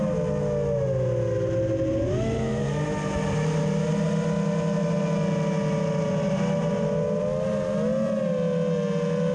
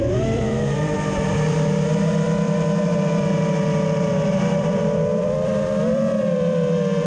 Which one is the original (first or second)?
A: first